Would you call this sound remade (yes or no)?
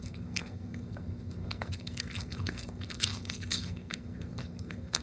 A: yes